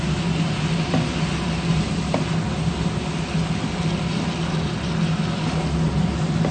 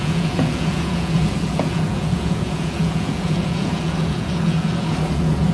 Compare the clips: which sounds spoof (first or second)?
second